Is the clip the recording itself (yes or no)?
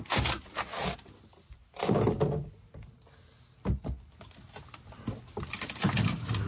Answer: yes